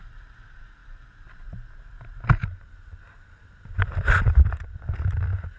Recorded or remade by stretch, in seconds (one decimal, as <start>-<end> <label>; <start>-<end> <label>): 0.0-5.6 recorded